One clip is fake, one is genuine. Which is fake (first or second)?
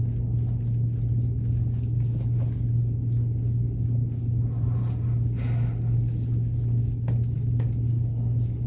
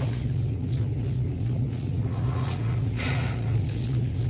second